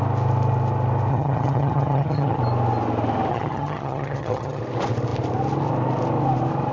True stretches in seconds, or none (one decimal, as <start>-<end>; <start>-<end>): 0.0-1.1; 2.4-3.3; 4.6-6.7